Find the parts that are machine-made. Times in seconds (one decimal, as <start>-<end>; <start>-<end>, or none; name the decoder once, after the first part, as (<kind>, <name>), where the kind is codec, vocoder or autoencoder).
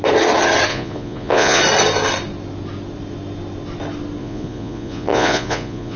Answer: 0.7-1.6 (vocoder, Vocos); 4.2-6.0